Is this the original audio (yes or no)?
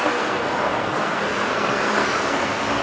no